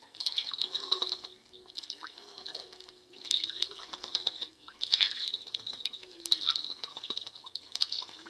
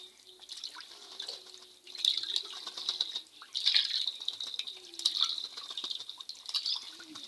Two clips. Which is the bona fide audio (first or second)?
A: second